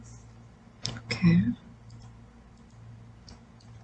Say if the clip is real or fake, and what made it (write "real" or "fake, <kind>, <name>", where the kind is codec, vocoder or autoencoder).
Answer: real